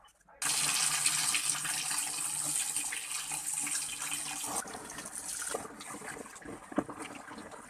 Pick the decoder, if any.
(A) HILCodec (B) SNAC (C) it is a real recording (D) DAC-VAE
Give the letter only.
C